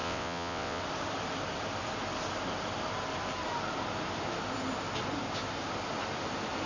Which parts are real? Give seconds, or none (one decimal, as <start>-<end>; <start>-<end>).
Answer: 0.8-6.7